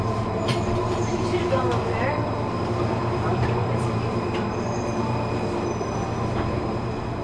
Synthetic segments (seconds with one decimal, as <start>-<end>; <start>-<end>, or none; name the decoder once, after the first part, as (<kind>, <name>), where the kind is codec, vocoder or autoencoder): 0.0-7.2 (vocoder, BigVGAN v2)